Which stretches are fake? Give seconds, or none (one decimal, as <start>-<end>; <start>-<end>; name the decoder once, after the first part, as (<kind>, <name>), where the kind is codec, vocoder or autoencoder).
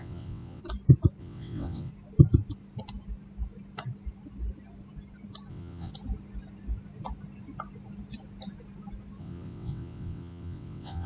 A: 0.0-0.6 (vocoder, WaveNeXt); 1.2-1.9; 5.5-5.9; 9.2-11.1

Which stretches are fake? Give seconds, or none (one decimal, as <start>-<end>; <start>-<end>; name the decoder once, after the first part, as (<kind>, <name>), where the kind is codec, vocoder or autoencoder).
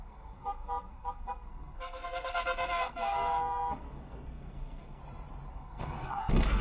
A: 0.0-5.0 (codec, SNAC); 5.5-6.6